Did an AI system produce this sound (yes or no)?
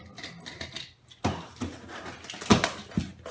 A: no